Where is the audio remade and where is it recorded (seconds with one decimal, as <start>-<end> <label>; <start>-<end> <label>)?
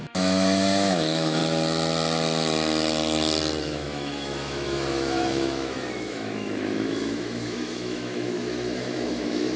0.0-1.4 remade; 1.4-3.6 recorded; 3.6-9.6 remade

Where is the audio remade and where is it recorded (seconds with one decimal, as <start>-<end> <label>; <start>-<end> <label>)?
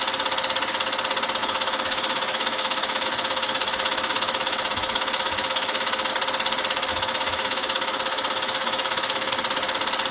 0.0-1.4 recorded; 1.4-6.1 remade; 6.1-6.9 recorded; 6.9-9.3 remade; 9.3-10.1 recorded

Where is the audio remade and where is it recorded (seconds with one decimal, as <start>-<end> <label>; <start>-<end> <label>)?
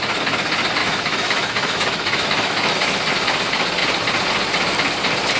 0.0-0.8 recorded; 0.8-3.1 remade; 3.1-5.4 recorded